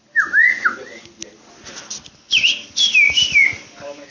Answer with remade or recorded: recorded